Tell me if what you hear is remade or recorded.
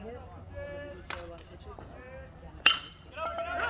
recorded